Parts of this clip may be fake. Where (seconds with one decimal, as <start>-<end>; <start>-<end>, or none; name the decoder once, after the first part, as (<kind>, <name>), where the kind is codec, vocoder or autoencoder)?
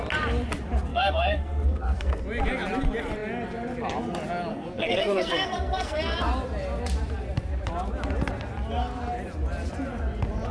0.9-2.2 (codec, SNAC); 4.5-6.0